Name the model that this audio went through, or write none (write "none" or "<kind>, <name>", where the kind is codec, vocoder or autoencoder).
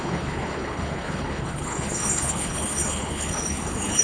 codec, HILCodec